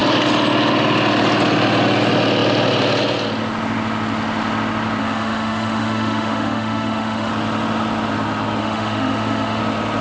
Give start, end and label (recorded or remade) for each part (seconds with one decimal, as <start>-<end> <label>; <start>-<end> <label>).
0.0-5.0 recorded; 5.0-7.3 remade; 7.3-8.6 recorded; 8.6-9.6 remade; 9.6-10.0 recorded